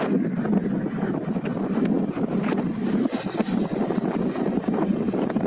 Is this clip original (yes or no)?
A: yes